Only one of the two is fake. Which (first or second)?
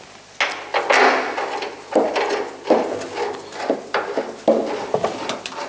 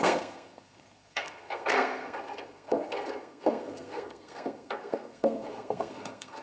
second